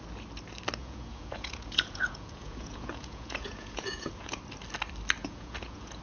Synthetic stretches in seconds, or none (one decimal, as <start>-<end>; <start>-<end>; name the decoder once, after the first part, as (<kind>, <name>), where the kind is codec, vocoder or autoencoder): 0.8-4.4 (vocoder, Vocos); 5.2-6.0